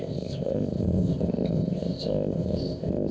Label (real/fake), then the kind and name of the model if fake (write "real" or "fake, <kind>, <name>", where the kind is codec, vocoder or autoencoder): fake, codec, ZipCodec